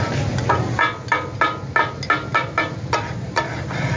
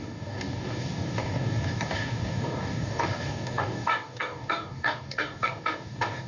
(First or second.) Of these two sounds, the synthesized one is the second